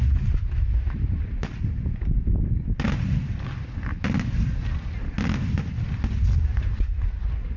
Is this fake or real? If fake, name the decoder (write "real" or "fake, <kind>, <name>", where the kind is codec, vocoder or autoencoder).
real